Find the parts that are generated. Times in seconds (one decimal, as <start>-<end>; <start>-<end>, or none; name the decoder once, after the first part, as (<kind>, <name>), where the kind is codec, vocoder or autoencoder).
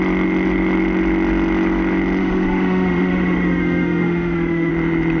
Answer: 2.2-4.7 (autoencoder, DAC-VAE)